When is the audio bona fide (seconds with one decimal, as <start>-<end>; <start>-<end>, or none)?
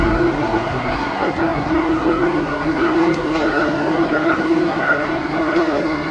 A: none